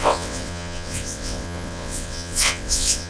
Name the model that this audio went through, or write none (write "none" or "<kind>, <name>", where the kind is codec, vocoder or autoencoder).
vocoder, WaveNeXt